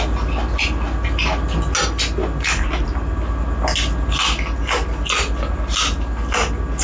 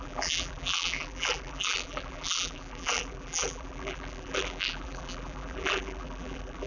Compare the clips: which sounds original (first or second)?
first